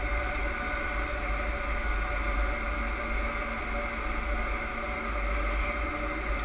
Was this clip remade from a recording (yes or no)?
no